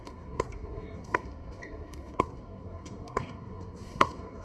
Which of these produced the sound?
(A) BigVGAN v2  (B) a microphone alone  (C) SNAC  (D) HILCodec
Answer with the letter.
C